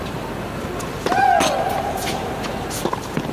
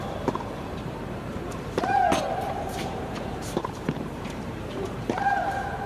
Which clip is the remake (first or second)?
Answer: second